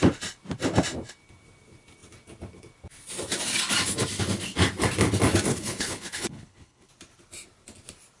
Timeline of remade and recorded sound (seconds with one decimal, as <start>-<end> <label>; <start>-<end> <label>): 0.0-5.5 recorded; 5.5-6.9 remade; 6.9-8.2 recorded